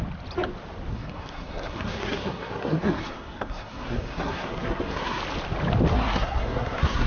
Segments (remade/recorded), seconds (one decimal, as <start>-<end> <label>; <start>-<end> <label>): 0.0-0.9 recorded; 0.9-5.2 remade; 5.2-5.9 recorded; 5.9-7.1 remade